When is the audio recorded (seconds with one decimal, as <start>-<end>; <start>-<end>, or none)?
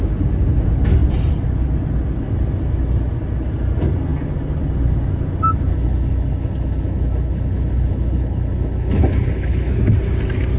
0.0-5.7; 9.7-10.6